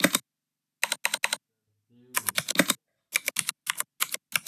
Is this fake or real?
real